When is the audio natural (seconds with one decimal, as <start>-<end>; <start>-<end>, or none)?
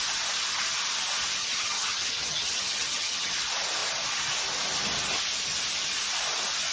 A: 0.0-1.4; 3.3-6.7